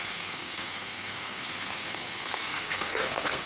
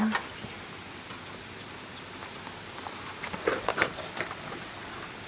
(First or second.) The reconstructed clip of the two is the first